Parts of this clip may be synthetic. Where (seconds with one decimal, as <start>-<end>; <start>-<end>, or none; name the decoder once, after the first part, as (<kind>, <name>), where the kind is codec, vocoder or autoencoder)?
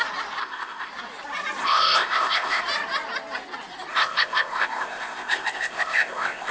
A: 0.4-0.9 (codec, ZipCodec); 1.6-2.6; 3.9-6.5